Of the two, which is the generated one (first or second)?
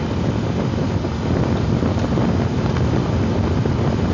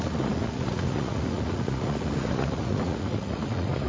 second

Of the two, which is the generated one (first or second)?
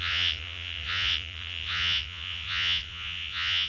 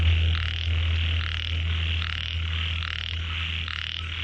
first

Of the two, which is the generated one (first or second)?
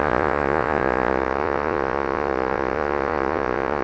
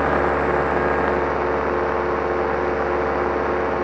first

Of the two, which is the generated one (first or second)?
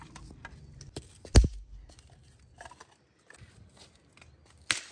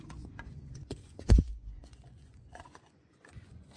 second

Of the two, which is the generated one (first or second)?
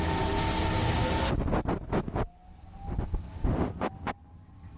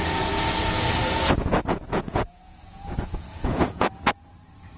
second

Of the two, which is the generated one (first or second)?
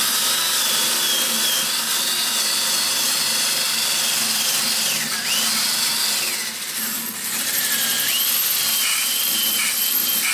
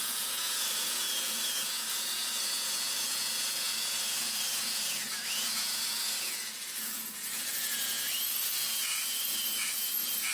second